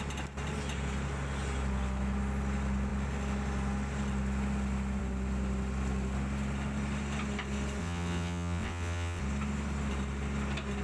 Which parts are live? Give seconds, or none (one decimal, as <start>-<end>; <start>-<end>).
0.0-7.8; 9.2-10.8